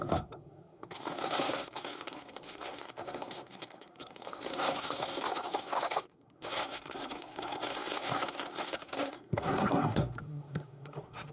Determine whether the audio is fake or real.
fake